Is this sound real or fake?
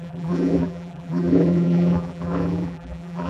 fake